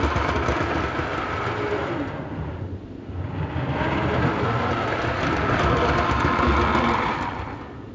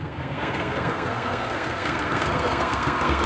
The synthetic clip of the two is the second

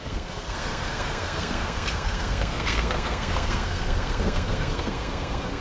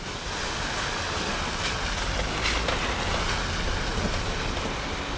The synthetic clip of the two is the first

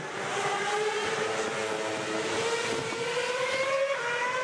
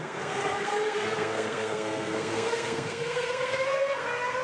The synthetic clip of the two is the second